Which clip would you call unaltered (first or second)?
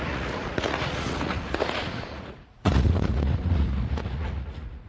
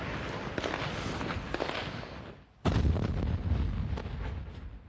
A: second